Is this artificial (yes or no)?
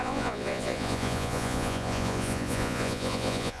yes